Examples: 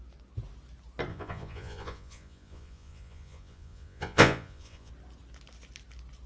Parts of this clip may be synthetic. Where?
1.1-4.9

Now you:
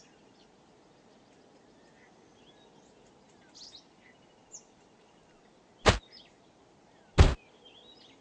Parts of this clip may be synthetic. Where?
none

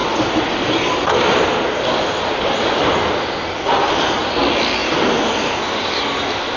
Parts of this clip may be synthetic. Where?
none